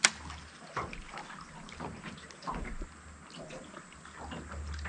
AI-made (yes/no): no